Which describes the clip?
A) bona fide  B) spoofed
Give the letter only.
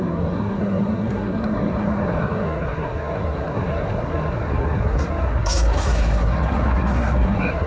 B